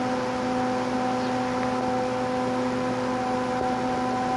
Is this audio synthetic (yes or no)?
no